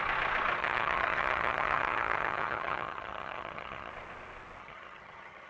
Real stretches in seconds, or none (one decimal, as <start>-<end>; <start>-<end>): 0.0-0.6; 3.9-4.6